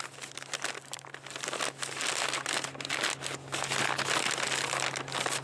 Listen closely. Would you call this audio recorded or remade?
recorded